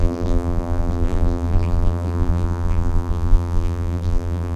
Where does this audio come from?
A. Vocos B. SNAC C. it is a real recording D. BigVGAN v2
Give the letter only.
D